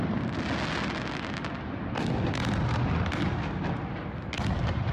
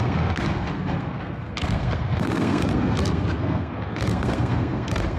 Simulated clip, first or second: second